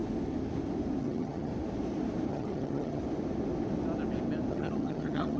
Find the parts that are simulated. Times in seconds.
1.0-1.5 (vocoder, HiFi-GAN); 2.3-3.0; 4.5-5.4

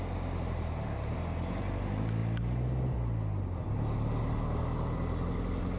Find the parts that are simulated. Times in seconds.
none